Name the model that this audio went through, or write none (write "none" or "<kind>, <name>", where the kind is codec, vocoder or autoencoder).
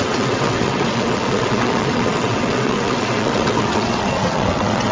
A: vocoder, WaveNeXt